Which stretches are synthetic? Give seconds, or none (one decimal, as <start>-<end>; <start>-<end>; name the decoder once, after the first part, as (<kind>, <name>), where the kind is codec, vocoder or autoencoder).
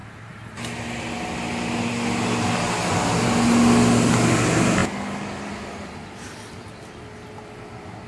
none